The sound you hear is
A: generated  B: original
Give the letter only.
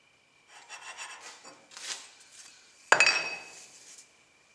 B